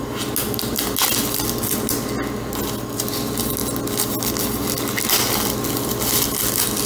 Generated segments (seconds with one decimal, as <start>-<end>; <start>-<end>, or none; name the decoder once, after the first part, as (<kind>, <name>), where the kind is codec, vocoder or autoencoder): none